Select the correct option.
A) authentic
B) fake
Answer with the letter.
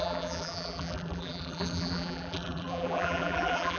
B